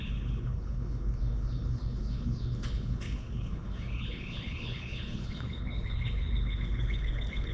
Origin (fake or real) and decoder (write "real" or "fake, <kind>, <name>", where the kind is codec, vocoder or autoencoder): fake, codec, HILCodec